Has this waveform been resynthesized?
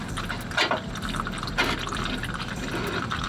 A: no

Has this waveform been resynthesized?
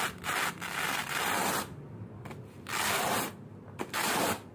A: no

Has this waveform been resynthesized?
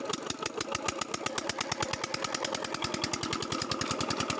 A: no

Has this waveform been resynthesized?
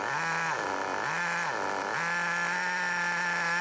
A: no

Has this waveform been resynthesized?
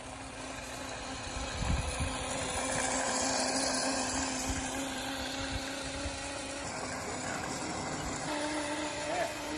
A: no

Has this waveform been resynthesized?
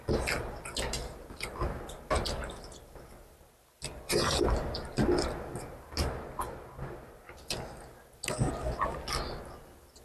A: no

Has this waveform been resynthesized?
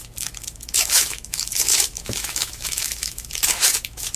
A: yes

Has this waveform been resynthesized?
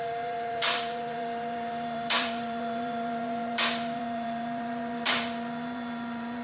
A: yes